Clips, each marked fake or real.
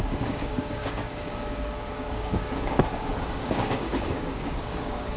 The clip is fake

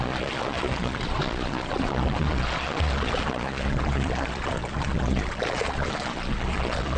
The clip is fake